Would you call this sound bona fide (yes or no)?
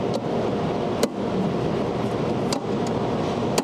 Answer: yes